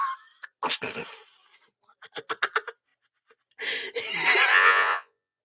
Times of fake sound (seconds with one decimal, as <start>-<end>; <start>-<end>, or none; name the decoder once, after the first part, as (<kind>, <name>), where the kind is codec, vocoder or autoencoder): 4.5-5.4 (vocoder, Vocos)